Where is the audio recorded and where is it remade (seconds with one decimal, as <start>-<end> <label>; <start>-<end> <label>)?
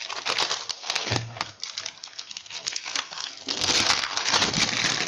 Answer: 0.0-0.7 recorded; 0.7-1.6 remade; 1.6-2.0 recorded; 2.0-4.5 remade; 4.5-5.1 recorded